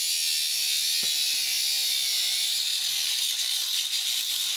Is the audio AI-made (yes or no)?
no